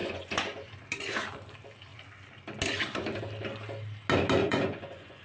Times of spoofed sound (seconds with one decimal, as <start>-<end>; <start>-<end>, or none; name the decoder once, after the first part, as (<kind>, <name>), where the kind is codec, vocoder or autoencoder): 0.0-0.7 (vocoder, Vocos); 4.4-5.2